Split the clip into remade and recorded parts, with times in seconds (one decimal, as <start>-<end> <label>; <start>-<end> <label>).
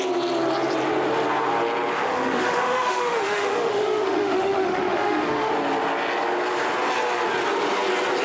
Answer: 0.0-1.9 recorded; 1.9-5.5 remade; 5.5-8.2 recorded